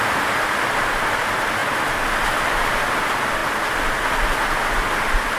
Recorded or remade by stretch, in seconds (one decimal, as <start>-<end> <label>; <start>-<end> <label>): 0.0-3.4 recorded; 3.4-4.0 remade; 4.0-5.4 recorded

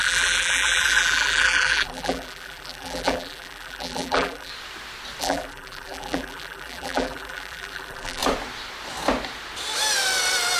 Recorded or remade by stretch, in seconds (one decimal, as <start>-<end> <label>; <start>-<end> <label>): 0.0-4.5 remade; 4.5-5.2 recorded; 5.2-8.2 remade; 8.2-10.6 recorded